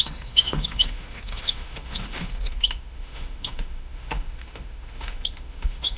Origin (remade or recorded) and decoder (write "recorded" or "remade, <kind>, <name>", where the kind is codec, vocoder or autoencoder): remade, autoencoder, DAC-VAE